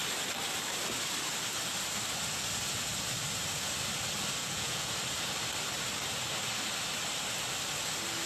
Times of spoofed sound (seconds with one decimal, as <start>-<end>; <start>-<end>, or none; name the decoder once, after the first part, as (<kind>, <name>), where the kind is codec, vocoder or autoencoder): 4.4-4.9 (vocoder, Vocos)